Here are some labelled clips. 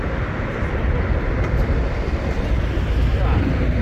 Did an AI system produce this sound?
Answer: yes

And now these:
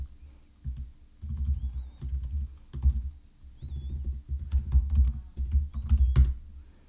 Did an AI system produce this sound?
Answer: no